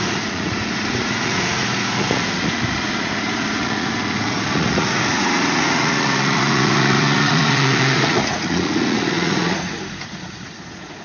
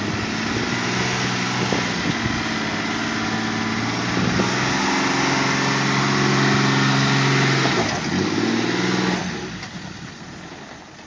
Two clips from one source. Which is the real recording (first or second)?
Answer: second